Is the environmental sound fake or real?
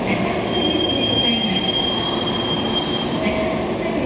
real